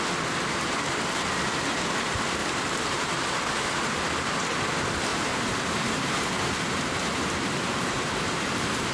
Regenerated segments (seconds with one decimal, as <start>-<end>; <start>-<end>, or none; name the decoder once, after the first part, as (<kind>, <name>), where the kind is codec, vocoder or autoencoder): 2.4-3.1 (vocoder, BigVGAN v2); 5.1-8.9